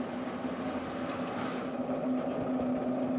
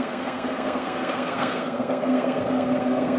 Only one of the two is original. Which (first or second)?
first